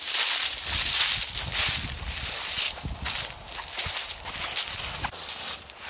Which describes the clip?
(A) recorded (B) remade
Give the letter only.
A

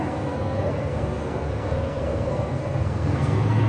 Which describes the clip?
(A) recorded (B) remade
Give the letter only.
B